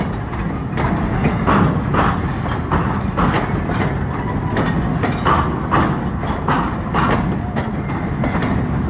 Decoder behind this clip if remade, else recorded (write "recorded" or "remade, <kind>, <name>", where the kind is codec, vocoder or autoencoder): recorded